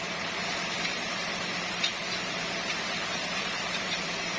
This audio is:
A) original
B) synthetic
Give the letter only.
B